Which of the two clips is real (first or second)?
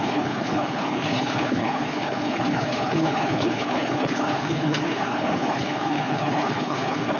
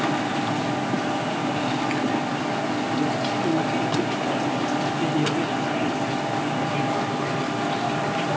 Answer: second